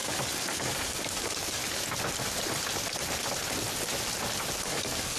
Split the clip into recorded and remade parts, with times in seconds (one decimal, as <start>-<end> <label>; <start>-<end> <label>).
0.0-1.6 remade; 1.6-4.6 recorded; 4.6-5.2 remade